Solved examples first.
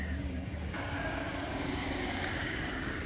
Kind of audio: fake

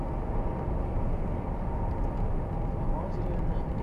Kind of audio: real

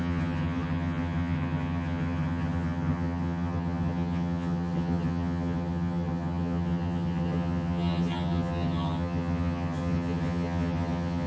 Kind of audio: fake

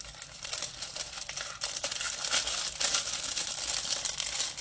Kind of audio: real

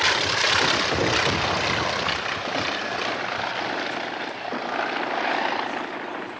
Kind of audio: real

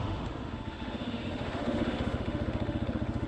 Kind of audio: fake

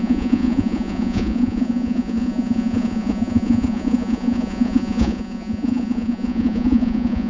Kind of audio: fake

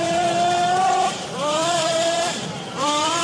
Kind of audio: fake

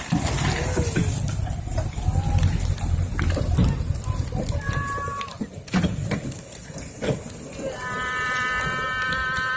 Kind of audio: real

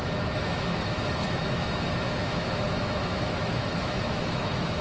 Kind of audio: fake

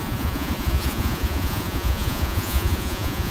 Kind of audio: fake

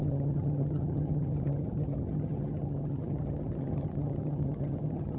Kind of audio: fake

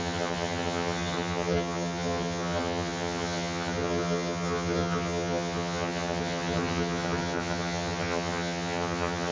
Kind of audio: fake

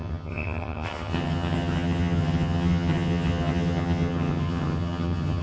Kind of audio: fake